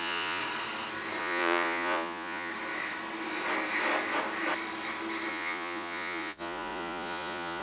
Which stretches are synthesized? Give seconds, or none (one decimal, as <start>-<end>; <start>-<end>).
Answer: 0.0-0.4; 1.2-2.5; 5.3-7.6